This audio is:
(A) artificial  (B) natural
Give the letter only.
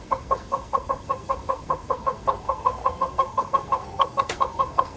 A